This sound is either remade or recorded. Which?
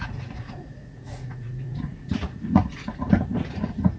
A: remade